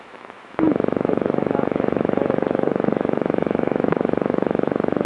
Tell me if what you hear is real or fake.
fake